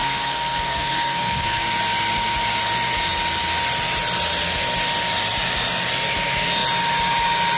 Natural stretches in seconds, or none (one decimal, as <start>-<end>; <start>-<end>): 1.6-7.6